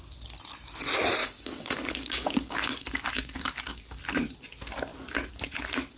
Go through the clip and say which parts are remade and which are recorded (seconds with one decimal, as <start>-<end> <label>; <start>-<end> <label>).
0.0-1.2 recorded; 1.2-4.0 remade; 4.0-6.0 recorded